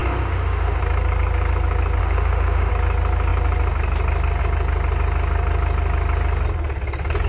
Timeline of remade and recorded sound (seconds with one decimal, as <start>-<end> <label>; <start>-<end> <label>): 0.0-0.8 remade; 0.8-2.0 recorded; 2.0-2.7 remade; 2.7-7.3 recorded